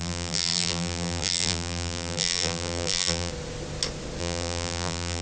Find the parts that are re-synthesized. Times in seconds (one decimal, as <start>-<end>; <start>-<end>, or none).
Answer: 0.0-3.3; 4.2-5.2